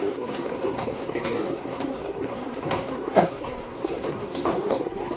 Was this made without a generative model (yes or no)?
no